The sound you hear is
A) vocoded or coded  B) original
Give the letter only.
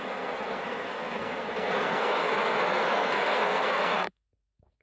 A